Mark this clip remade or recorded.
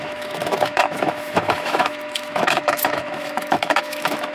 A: remade